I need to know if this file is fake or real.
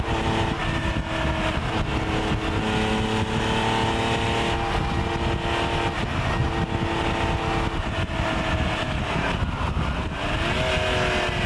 real